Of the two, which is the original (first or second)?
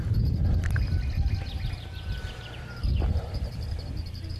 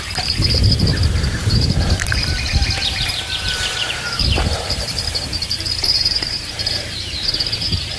first